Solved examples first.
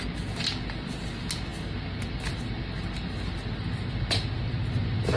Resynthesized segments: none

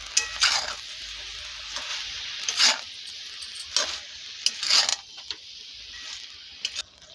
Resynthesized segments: 1.9-2.6 (vocoder, BigVGAN v2); 4.9-6.5

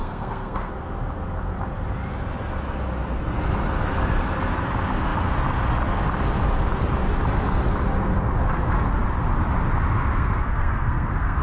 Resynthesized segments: 0.0-0.7 (codec, SNAC); 10.1-11.4

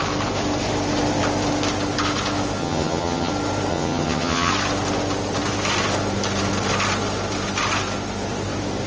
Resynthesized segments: 2.6-3.3 (vocoder, HiFi-GAN); 3.7-4.5

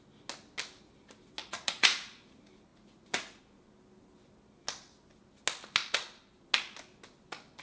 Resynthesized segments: 1.4-2.2 (vocoder, Vocos); 2.7-3.4

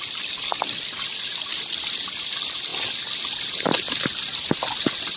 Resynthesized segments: none